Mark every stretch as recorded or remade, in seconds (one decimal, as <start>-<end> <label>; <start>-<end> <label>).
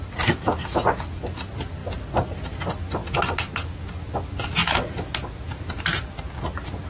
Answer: 0.0-6.9 recorded